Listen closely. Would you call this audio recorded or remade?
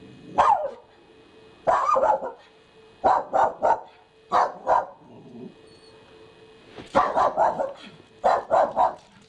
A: recorded